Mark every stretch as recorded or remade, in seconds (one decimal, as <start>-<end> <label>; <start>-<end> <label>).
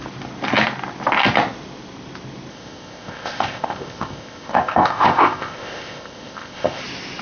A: 0.0-2.5 recorded; 2.5-6.8 remade; 6.8-7.2 recorded